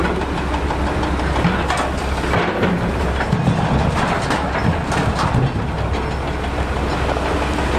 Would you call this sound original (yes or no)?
yes